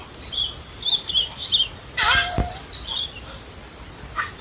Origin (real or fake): real